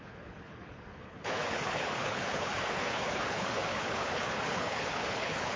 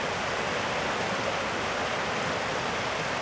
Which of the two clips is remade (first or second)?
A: first